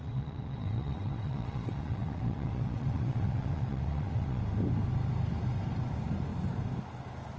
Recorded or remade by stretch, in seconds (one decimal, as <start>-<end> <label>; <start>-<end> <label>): 0.0-4.4 remade; 4.4-7.4 recorded